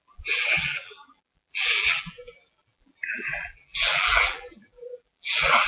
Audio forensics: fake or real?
fake